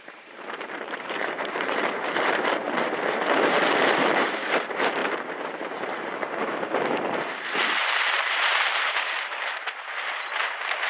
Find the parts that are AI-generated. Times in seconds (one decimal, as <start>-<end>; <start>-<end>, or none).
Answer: 0.0-10.9